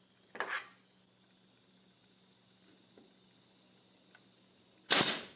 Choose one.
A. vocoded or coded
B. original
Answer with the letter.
B